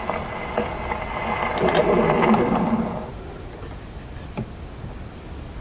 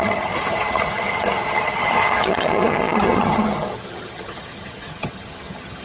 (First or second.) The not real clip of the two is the second